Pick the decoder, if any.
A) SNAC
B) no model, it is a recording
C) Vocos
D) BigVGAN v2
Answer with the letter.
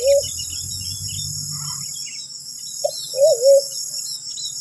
B